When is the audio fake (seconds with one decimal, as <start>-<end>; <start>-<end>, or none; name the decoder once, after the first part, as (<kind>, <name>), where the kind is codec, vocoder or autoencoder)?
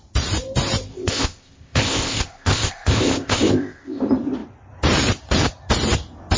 0.9-4.0 (codec, ZipCodec)